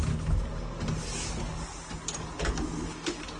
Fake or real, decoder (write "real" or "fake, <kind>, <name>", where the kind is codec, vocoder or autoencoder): real